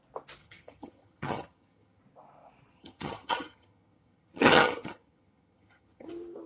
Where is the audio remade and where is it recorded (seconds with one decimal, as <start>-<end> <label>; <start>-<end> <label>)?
0.0-0.4 recorded; 0.4-2.0 remade; 2.0-2.7 recorded; 2.7-6.1 remade; 6.1-6.5 recorded